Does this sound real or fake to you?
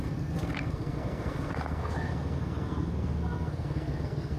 fake